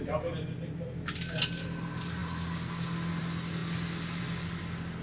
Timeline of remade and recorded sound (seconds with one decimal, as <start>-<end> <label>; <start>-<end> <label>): 0.0-5.0 recorded